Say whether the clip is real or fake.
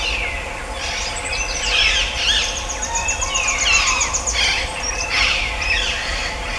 real